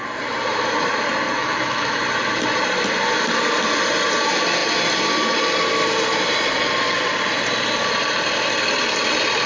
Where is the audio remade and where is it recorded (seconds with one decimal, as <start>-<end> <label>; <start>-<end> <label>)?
0.0-1.4 recorded; 1.4-2.0 remade; 2.0-9.5 recorded